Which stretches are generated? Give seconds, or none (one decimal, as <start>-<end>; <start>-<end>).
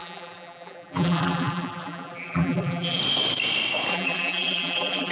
0.0-3.0; 3.9-5.1